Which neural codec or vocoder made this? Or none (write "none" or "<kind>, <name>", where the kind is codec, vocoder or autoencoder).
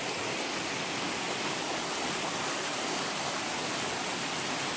none